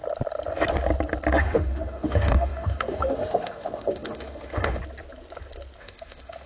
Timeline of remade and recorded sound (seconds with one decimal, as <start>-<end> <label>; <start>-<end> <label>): 0.0-1.4 recorded; 1.4-4.8 remade; 4.8-5.8 recorded; 5.8-6.5 remade